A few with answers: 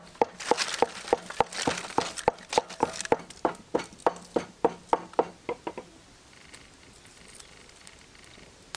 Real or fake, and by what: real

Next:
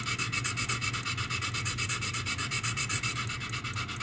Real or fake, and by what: real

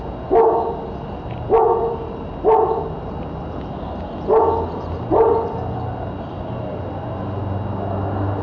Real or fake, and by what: real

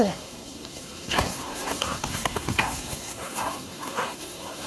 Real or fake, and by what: fake, codec, SNAC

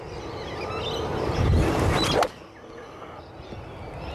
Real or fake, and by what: real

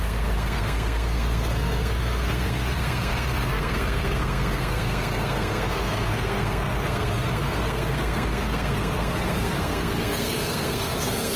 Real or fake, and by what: fake, codec, SNAC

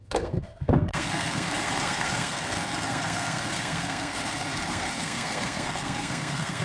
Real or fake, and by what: fake, codec, SNAC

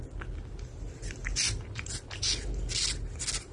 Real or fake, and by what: real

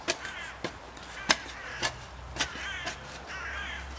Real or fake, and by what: real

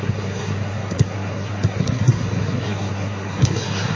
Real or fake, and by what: fake, codec, SNAC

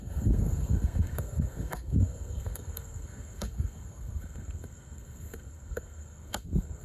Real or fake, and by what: fake, codec, SNAC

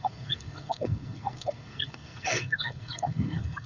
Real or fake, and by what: fake, codec, SNAC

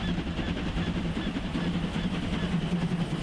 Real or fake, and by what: real